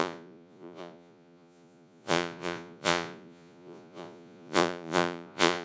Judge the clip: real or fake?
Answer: fake